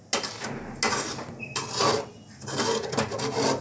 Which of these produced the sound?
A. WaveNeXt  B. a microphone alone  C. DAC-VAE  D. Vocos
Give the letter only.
B